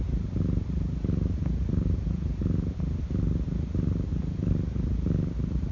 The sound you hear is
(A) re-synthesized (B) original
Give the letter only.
B